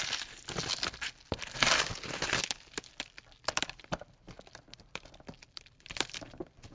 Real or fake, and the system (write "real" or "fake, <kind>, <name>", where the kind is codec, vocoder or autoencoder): fake, vocoder, BigVGAN v2